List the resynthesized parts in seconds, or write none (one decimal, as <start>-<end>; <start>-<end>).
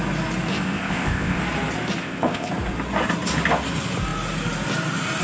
0.5-1.4; 2.0-2.5